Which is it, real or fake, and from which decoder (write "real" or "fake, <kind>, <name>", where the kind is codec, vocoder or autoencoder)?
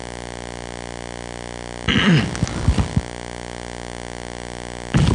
real